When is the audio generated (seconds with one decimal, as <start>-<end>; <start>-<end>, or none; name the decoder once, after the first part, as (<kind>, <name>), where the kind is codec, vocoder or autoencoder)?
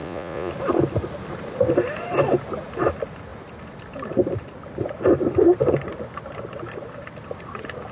0.0-0.5 (vocoder, Vocos)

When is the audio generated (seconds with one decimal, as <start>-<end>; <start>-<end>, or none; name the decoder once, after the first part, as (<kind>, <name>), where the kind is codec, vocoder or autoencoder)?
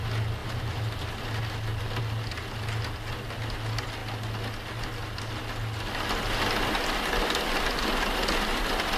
none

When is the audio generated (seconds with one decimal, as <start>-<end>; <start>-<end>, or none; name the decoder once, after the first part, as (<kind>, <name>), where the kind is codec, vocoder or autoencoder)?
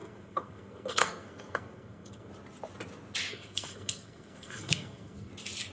0.0-2.3 (codec, SNAC); 3.3-5.3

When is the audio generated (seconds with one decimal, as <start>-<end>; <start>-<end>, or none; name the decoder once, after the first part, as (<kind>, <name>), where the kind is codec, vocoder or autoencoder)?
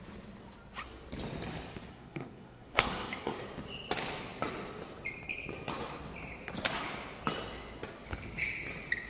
1.9-3.4 (codec, SNAC)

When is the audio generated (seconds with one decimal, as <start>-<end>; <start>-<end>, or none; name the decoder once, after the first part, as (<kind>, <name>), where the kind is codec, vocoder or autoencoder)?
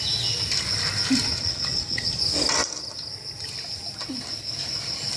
1.3-2.2 (vocoder, Vocos)